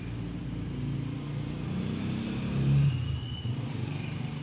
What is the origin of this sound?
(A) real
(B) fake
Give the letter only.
A